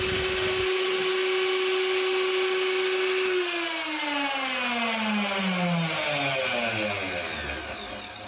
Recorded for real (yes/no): yes